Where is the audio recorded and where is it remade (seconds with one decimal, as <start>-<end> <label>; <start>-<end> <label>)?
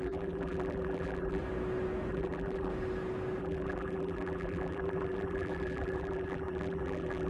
0.0-1.4 remade; 1.4-2.1 recorded; 2.1-2.7 remade; 2.7-3.4 recorded; 3.4-7.3 remade